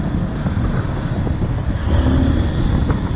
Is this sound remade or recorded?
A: recorded